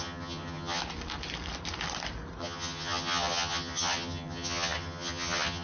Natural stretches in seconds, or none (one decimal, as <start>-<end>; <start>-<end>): 0.8-2.4